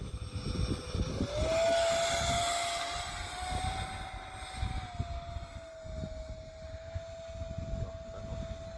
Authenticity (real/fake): real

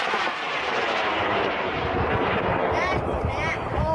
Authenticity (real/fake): fake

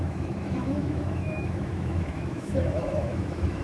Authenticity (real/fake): fake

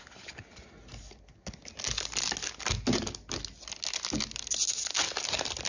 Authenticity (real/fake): real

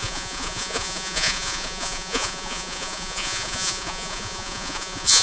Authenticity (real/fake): fake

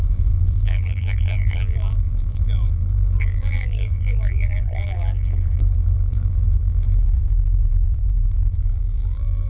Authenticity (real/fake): fake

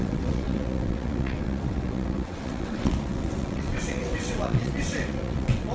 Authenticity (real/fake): fake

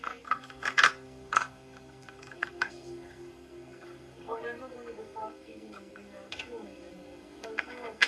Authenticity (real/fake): fake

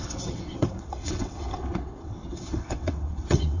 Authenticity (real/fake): fake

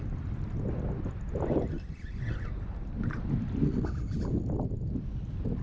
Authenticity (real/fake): real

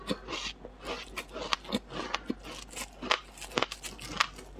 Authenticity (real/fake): real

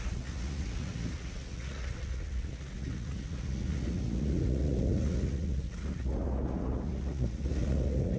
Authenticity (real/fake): fake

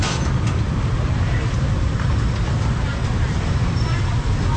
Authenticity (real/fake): fake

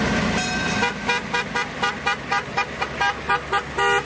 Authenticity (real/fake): real